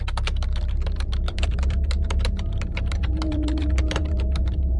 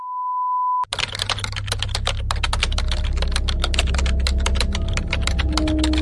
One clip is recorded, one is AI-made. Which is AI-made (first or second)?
first